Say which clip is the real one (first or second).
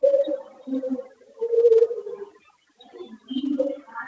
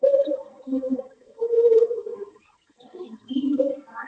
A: first